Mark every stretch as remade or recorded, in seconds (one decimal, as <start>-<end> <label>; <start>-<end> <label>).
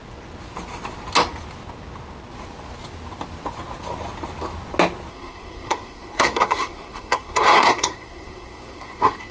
0.0-5.1 recorded; 5.1-9.3 remade